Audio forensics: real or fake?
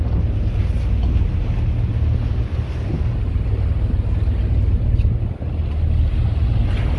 real